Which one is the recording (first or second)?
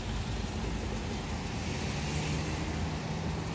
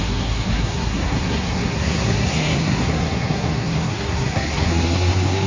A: first